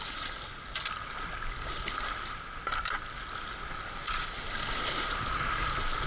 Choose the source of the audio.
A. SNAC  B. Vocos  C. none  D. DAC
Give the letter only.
C